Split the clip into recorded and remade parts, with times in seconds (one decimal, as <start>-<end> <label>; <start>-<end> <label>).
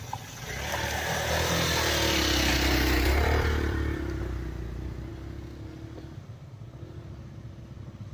0.0-2.5 recorded; 2.5-4.2 remade; 4.2-8.1 recorded